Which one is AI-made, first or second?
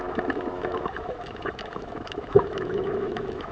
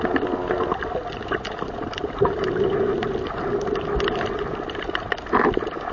first